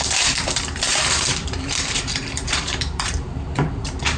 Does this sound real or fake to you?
fake